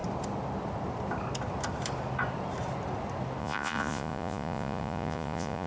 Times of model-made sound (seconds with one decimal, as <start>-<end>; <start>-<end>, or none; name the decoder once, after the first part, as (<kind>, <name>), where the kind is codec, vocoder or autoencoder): 3.4-5.7 (vocoder, Vocos)